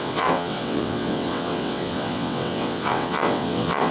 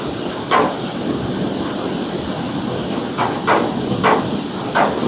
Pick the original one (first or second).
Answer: second